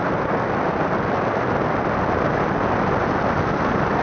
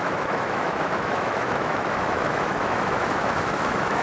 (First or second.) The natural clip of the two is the first